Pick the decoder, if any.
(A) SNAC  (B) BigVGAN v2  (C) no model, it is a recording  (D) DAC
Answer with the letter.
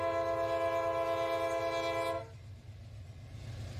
C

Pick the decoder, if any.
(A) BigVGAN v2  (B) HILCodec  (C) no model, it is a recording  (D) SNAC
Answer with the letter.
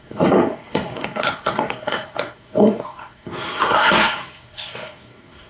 D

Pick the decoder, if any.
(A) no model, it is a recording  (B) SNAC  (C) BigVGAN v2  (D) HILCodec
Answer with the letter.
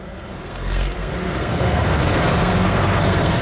B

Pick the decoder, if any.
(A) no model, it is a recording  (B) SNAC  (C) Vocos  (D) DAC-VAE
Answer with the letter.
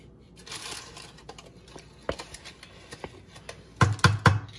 A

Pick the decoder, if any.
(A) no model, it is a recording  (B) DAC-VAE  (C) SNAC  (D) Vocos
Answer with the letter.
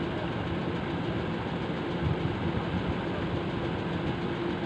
A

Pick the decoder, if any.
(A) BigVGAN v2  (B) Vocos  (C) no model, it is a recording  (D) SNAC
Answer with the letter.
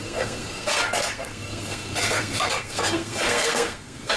D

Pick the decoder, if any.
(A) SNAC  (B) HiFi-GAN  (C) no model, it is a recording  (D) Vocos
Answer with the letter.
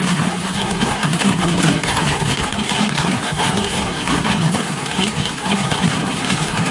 A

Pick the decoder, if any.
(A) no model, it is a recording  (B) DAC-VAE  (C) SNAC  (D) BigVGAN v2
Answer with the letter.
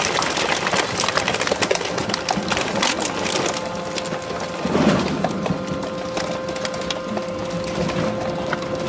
A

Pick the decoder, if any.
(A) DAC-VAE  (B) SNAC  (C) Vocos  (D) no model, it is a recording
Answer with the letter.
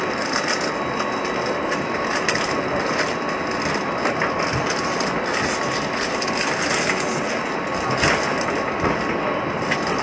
D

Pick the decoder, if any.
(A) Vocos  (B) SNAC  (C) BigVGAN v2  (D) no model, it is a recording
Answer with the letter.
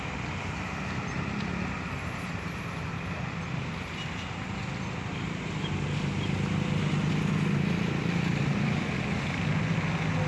D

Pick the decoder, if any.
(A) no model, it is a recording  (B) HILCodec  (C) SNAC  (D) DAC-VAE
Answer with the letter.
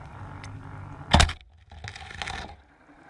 A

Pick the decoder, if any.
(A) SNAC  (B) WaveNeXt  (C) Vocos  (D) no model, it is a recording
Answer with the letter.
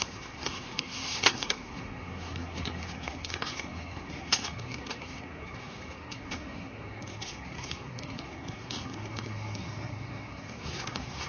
A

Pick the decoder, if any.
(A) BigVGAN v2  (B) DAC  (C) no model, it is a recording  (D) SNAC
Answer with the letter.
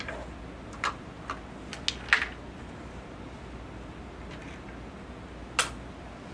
C